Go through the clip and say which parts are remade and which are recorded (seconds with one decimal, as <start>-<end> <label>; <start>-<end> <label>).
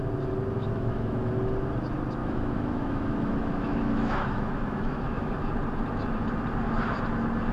0.0-0.6 recorded; 0.6-1.3 remade; 1.3-2.2 recorded; 2.2-5.3 remade; 5.3-7.5 recorded